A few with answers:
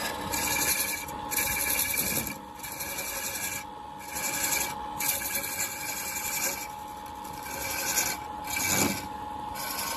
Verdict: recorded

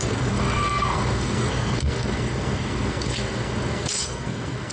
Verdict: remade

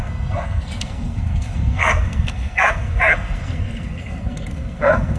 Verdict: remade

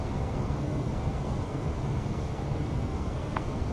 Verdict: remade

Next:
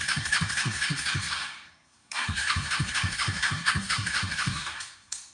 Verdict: remade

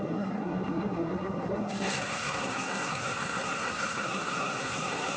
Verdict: remade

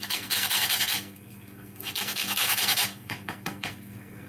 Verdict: remade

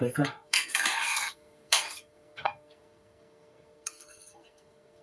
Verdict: remade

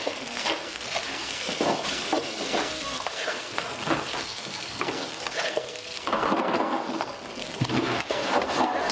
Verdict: remade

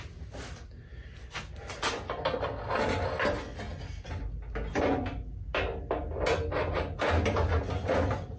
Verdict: recorded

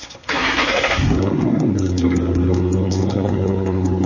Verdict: remade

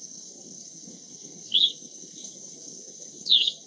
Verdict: remade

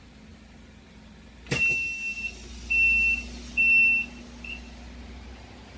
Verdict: recorded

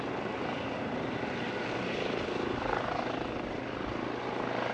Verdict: recorded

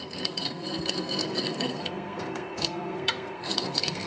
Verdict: remade